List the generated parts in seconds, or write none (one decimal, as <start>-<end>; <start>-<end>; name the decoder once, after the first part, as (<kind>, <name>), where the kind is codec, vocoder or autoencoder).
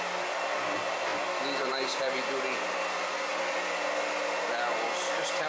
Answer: none